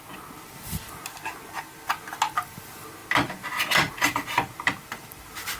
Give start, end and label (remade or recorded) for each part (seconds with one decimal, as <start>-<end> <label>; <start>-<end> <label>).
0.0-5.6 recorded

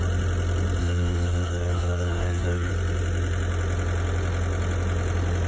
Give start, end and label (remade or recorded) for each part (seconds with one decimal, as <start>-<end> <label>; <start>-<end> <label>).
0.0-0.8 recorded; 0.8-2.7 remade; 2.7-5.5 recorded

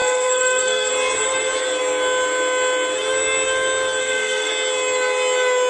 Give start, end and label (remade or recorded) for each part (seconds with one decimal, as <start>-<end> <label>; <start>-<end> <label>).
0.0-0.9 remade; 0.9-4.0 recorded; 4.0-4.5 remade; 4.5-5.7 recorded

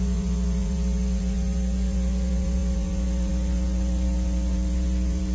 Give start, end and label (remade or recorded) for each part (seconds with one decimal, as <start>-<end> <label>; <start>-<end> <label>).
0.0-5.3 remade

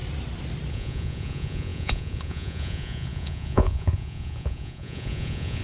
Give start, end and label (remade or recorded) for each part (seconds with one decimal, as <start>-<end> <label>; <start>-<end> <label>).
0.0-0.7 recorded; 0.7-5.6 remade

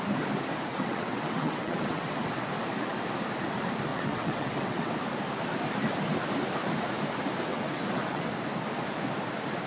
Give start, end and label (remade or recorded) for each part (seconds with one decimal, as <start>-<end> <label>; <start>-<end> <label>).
0.0-0.7 recorded; 0.7-2.1 remade; 2.1-3.9 recorded; 3.9-4.9 remade; 4.9-7.5 recorded; 7.5-8.3 remade; 8.3-9.7 recorded

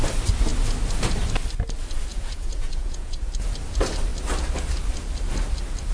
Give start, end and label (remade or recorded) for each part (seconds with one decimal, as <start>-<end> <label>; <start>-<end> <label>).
0.0-2.1 recorded; 2.1-3.3 remade; 3.3-5.9 recorded

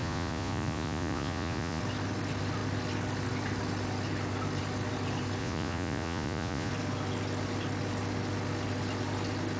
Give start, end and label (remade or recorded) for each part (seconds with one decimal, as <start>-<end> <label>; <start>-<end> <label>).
0.0-1.8 remade; 1.8-5.4 recorded; 5.4-6.7 remade; 6.7-9.6 recorded